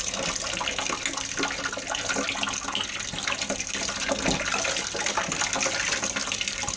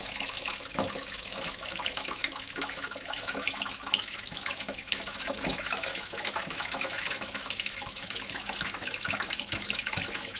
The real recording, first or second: first